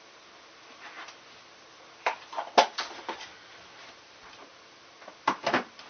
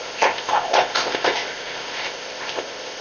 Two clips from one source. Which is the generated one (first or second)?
second